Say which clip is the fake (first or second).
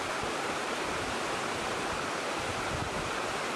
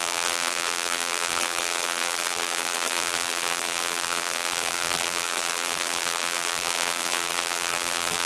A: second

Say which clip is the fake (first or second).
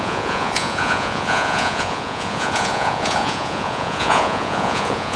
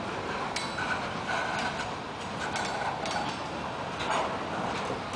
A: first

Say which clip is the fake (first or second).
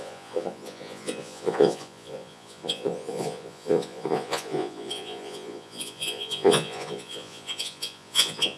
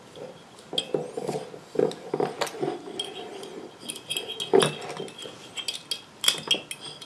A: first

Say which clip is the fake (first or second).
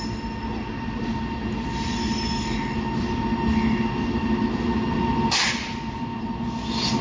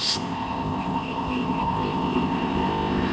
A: second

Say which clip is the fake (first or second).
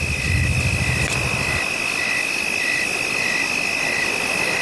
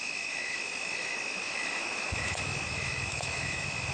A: second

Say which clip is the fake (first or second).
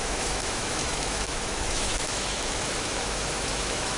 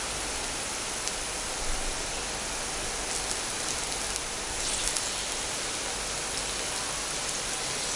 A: first